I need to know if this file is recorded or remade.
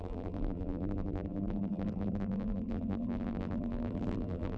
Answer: remade